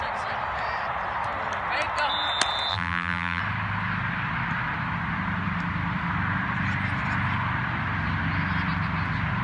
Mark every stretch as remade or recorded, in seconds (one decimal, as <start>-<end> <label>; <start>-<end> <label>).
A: 0.0-2.7 recorded; 2.7-3.4 remade; 3.4-9.4 recorded

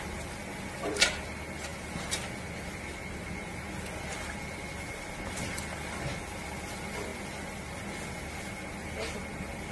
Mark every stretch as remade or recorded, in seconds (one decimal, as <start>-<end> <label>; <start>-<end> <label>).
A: 0.0-9.7 recorded

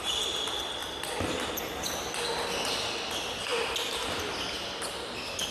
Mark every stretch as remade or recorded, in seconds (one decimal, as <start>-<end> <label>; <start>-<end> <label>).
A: 0.0-0.8 recorded; 0.8-1.5 remade; 1.5-5.5 recorded

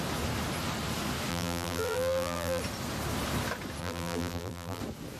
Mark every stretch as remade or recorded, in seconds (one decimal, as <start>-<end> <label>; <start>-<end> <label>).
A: 0.0-1.3 recorded; 1.3-2.6 remade; 2.6-3.8 recorded; 3.8-4.8 remade; 4.8-5.2 recorded